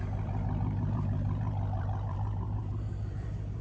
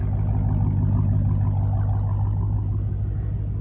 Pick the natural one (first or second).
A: second